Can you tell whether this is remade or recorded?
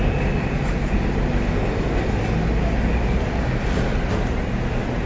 recorded